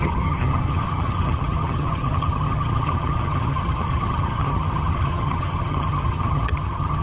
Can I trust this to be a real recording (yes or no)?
no